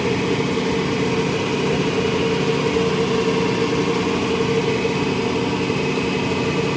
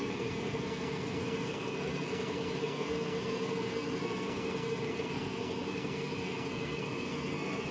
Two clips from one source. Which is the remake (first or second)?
second